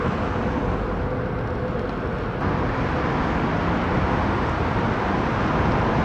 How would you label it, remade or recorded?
recorded